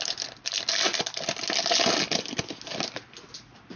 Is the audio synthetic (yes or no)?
no